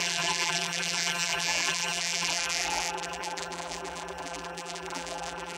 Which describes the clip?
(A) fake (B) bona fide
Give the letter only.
A